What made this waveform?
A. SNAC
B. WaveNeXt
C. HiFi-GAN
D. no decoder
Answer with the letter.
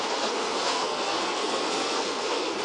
A